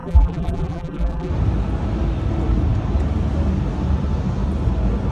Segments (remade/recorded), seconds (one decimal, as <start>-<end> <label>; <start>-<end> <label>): 0.0-1.3 remade; 1.3-5.1 recorded